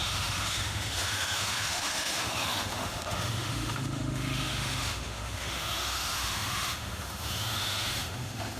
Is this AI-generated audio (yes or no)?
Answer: yes